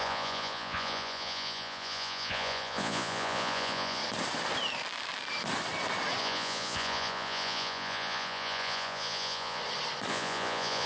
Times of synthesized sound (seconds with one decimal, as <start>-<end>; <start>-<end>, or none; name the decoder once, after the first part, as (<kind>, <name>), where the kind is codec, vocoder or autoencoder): 0.0-4.0 (vocoder, Vocos); 6.2-9.6; 10.1-10.9

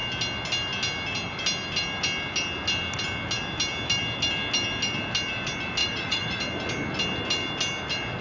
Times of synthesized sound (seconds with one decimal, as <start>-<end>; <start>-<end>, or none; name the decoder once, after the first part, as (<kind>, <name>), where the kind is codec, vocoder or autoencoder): 5.8-6.4 (vocoder, Vocos)

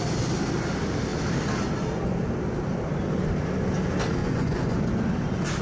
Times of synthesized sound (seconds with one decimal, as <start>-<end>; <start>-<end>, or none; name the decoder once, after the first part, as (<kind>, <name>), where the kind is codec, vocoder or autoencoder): 4.2-4.8 (vocoder, Vocos)

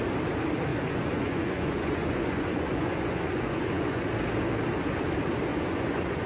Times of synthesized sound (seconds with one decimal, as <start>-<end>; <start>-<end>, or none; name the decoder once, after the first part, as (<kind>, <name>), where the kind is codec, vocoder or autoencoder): 0.7-4.0 (vocoder, Vocos); 5.5-6.3

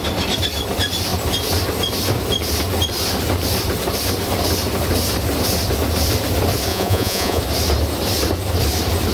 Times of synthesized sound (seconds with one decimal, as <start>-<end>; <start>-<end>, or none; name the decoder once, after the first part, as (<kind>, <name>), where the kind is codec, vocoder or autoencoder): 6.7-7.4 (vocoder, Vocos)

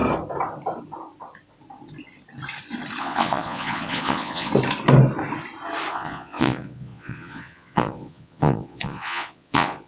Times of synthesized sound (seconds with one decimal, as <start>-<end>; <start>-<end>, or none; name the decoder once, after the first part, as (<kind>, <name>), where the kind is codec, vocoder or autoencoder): 3.0-4.5 (vocoder, Vocos); 5.9-9.9